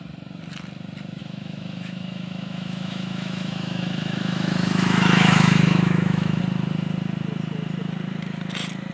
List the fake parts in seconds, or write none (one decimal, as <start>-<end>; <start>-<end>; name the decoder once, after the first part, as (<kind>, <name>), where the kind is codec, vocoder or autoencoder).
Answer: 1.2-6.4 (autoencoder, DAC-VAE)